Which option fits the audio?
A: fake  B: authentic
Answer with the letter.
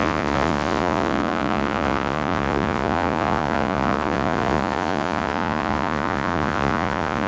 A